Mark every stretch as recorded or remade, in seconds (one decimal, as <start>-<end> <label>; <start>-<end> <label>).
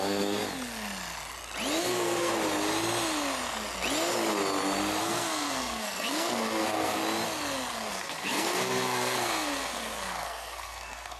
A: 0.0-0.4 remade; 0.4-1.8 recorded; 1.8-2.3 remade; 2.3-5.0 recorded; 5.0-7.0 remade; 7.0-7.9 recorded; 7.9-11.2 remade